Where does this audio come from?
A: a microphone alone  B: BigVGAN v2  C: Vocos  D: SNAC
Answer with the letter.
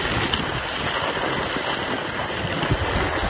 A